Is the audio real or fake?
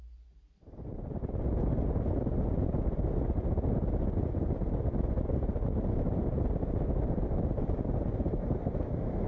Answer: real